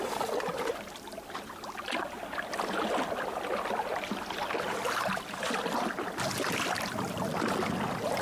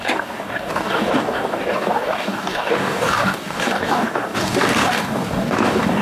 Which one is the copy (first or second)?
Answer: second